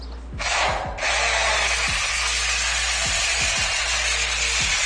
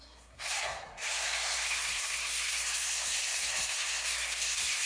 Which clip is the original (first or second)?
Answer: first